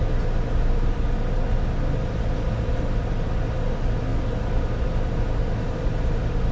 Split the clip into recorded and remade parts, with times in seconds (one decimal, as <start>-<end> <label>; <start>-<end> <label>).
0.0-6.5 recorded